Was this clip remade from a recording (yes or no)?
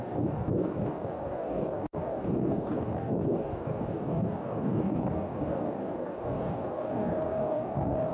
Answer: yes